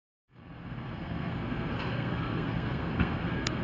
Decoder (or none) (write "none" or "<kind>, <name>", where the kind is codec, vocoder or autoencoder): codec, SNAC